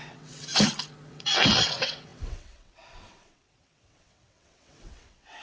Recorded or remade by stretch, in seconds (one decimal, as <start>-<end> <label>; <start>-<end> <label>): 0.0-0.5 remade; 0.5-1.1 recorded; 1.1-5.4 remade